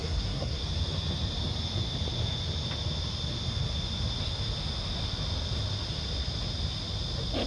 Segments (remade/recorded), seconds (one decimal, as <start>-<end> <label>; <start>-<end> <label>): 0.0-0.6 remade; 0.6-7.5 recorded